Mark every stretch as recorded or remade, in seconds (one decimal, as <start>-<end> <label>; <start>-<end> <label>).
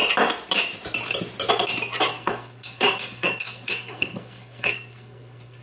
0.0-2.1 recorded; 2.1-5.6 remade